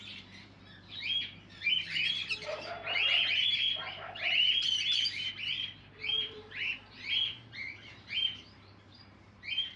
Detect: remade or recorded remade